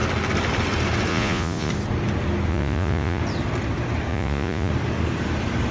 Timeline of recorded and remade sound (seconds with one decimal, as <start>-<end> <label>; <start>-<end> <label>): 0.0-1.1 recorded; 1.1-1.7 remade; 1.7-2.5 recorded; 2.5-3.2 remade; 3.2-4.1 recorded; 4.1-4.7 remade; 4.7-5.7 recorded

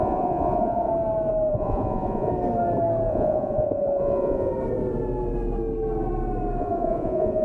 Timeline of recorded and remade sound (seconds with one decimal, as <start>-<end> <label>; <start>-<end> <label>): 0.0-0.9 remade; 0.9-1.5 recorded; 1.5-2.3 remade; 2.3-3.1 recorded; 3.1-4.5 remade; 4.5-6.6 recorded; 6.6-7.4 remade

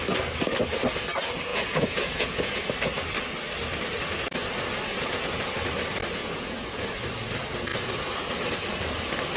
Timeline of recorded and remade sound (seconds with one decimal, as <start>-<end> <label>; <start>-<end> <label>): 0.0-1.5 recorded; 1.5-2.7 remade; 2.7-4.9 recorded; 4.9-5.4 remade; 5.4-6.2 recorded; 6.2-6.8 remade; 6.8-9.4 recorded

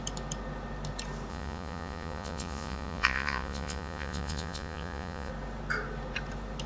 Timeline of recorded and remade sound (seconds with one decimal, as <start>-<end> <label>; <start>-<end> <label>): 0.0-1.3 recorded; 1.3-5.3 remade; 5.3-6.7 recorded

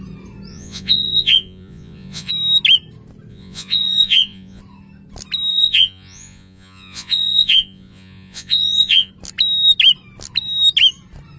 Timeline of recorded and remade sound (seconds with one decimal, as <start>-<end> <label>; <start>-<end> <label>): 0.0-0.5 recorded; 0.5-2.3 remade; 2.3-3.3 recorded; 3.3-4.6 remade; 4.6-5.5 recorded; 5.5-9.1 remade; 9.1-11.4 recorded

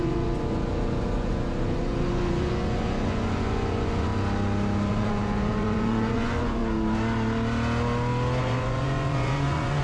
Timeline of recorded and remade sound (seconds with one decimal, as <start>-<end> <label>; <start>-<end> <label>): 0.0-4.1 remade; 4.1-4.9 recorded; 4.9-6.6 remade; 6.6-8.4 recorded; 8.4-9.8 remade

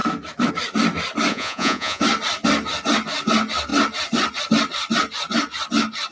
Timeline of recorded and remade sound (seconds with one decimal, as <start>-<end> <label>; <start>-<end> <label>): 0.0-1.3 recorded; 1.3-2.0 remade; 2.0-6.1 recorded